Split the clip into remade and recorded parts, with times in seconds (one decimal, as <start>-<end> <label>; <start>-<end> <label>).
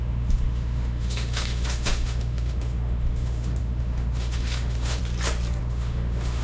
0.0-5.0 remade; 5.0-5.6 recorded; 5.6-6.4 remade